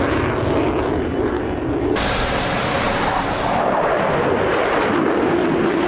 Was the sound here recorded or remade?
recorded